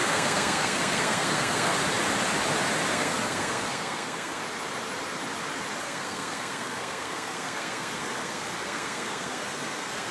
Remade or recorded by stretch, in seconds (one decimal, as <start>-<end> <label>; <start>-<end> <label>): 0.0-1.7 remade; 1.7-2.9 recorded; 2.9-4.4 remade; 4.4-5.8 recorded; 5.8-10.1 remade